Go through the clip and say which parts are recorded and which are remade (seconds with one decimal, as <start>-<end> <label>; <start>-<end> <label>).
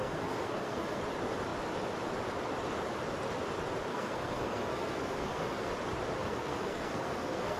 0.0-1.0 remade; 1.0-3.9 recorded; 3.9-5.7 remade; 5.7-6.2 recorded; 6.2-7.6 remade